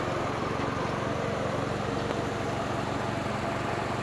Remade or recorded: recorded